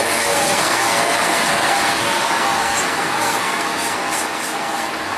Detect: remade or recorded remade